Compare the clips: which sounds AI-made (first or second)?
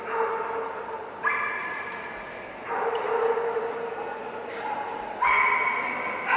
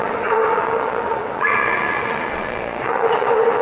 second